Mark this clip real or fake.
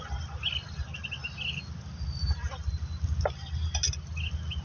real